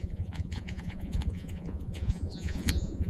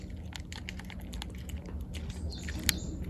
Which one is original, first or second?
second